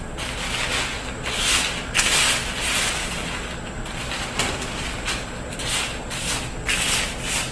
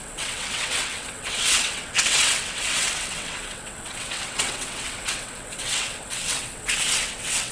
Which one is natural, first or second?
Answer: first